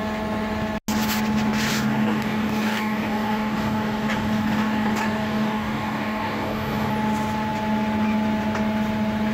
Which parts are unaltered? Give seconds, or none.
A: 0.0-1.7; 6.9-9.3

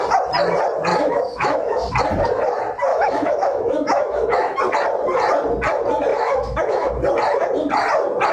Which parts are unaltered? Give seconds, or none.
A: 0.0-0.9; 1.9-2.9; 4.6-6.1; 6.9-8.3

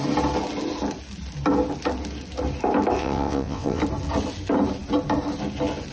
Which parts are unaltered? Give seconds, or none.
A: 0.0-3.0; 3.8-5.9

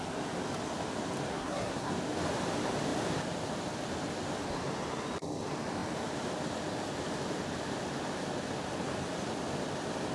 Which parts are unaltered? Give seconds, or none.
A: 0.0-1.3; 1.9-10.1